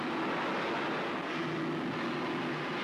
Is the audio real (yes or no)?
yes